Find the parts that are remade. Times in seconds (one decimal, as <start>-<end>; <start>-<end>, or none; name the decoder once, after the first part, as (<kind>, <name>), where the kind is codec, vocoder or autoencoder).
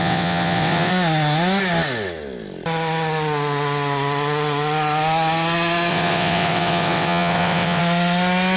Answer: 0.0-0.9 (vocoder, WaveNeXt); 5.9-7.8